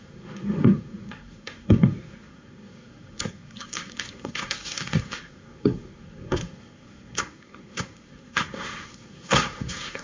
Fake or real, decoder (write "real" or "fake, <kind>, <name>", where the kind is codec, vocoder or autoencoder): fake, codec, SNAC